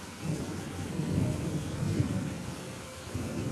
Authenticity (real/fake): fake